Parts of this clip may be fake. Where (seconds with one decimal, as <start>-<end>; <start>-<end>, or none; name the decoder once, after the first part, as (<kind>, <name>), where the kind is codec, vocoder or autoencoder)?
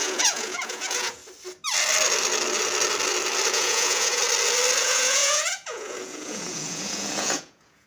0.0-1.2 (vocoder, Vocos); 3.5-4.2; 4.8-7.9